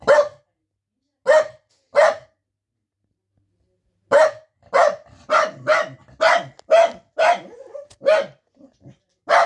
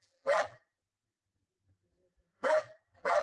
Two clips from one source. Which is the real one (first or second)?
first